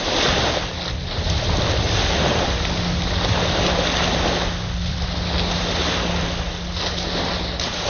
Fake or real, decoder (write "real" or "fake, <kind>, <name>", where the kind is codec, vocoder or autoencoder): real